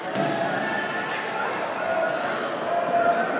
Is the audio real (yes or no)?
yes